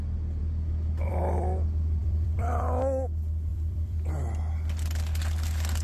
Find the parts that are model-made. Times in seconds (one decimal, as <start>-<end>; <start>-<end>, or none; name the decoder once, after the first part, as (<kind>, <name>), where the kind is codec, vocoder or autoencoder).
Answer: 2.0-2.8 (vocoder, BigVGAN v2); 3.5-4.1

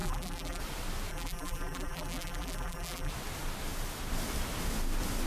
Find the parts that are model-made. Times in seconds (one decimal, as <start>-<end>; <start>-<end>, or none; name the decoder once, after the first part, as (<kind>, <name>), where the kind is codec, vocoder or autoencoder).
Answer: 0.0-0.6 (vocoder, BigVGAN v2); 1.1-3.1

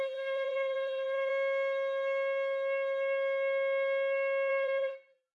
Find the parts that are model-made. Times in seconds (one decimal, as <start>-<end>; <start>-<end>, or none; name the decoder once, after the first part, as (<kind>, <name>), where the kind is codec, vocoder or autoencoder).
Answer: 0.0-1.3 (vocoder, BigVGAN v2); 4.5-5.4

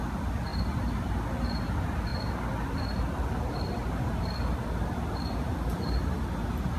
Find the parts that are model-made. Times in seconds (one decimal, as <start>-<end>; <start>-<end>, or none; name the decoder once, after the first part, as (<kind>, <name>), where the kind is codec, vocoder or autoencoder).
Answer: 2.1-6.2 (vocoder, BigVGAN v2)

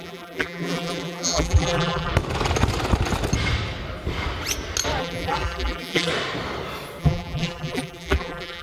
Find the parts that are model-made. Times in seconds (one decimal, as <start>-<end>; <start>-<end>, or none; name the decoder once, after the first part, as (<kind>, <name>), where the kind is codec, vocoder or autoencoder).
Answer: 0.0-2.1 (vocoder, BigVGAN v2); 5.0-6.1; 7.0-8.6